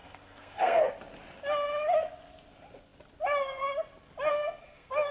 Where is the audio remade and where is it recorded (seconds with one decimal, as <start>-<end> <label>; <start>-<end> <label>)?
0.0-0.8 remade; 0.8-4.3 recorded; 4.3-5.1 remade